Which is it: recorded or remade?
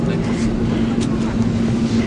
recorded